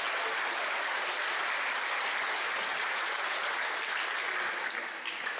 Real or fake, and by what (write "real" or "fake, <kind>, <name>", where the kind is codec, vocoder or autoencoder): real